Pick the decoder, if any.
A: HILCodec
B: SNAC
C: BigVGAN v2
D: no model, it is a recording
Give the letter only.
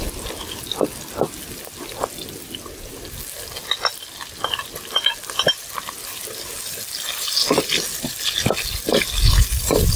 D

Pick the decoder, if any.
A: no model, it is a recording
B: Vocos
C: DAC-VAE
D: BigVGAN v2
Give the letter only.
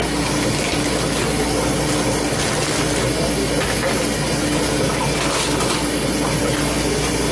A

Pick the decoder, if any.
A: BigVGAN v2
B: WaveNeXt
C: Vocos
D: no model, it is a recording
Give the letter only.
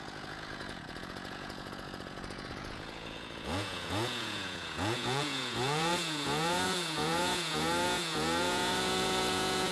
C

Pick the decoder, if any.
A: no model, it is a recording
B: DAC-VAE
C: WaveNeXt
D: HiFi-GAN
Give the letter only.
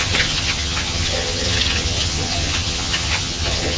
D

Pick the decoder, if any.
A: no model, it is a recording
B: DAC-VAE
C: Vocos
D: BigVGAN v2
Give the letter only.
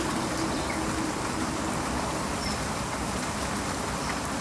D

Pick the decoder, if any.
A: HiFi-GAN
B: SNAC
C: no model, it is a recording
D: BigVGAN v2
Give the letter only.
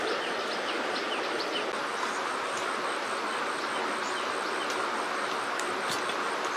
C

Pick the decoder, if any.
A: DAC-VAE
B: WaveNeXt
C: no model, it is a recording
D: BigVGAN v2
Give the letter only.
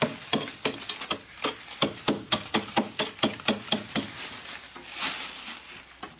C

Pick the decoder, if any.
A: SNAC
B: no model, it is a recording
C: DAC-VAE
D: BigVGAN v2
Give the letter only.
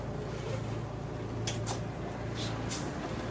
B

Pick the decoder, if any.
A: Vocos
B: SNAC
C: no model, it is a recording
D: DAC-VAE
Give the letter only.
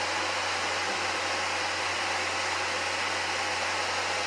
C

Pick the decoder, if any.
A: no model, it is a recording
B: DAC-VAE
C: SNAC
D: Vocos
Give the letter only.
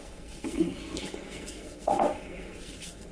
C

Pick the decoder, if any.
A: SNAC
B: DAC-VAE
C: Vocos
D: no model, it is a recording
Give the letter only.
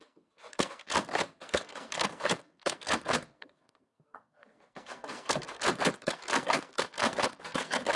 A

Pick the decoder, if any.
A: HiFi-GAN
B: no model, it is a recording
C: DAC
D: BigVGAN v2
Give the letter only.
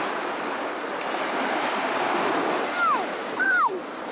B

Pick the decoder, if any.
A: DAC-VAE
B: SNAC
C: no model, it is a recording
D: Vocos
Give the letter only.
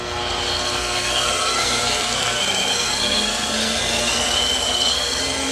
B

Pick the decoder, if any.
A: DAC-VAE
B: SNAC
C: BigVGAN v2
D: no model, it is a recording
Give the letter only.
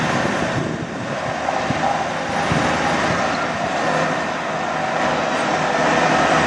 D